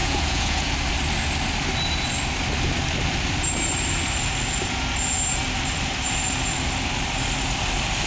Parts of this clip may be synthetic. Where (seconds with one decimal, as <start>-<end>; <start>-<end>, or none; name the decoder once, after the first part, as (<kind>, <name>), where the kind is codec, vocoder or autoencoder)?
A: 0.0-0.7 (vocoder, Vocos)

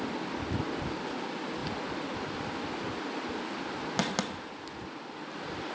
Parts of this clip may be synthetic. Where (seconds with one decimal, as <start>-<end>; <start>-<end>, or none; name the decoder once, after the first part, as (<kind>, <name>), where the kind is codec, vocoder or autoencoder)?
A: none